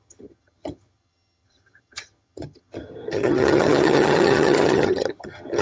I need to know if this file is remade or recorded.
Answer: remade